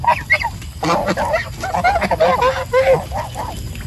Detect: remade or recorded recorded